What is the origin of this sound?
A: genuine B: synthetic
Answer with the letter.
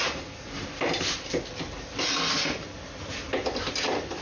A